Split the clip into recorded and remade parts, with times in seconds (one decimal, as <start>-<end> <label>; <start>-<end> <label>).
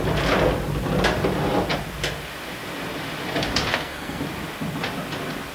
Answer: 0.0-3.7 recorded; 3.7-4.2 remade; 4.2-5.5 recorded